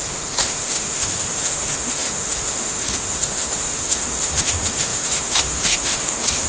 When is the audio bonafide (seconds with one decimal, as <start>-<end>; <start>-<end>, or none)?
none